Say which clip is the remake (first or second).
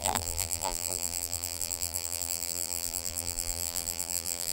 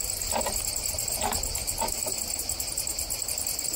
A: first